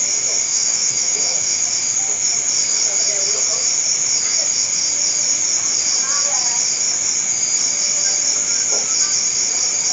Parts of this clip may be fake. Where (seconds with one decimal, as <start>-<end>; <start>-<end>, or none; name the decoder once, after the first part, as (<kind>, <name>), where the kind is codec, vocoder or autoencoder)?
0.5-1.6 (autoencoder, DAC-VAE)